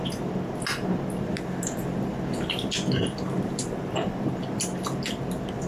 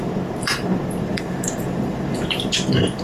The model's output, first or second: second